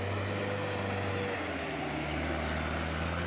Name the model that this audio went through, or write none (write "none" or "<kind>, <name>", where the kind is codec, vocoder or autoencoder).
none